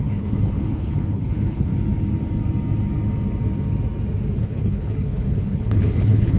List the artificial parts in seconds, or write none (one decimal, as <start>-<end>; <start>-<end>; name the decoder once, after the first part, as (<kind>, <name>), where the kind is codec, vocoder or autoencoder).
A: 0.0-1.7 (codec, HILCodec); 4.4-6.4